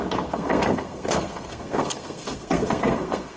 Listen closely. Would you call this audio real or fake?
fake